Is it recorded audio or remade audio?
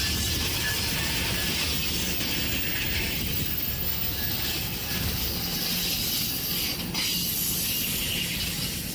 recorded